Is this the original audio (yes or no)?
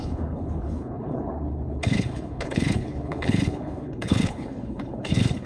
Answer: no